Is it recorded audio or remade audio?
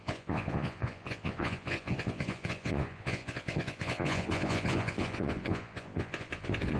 remade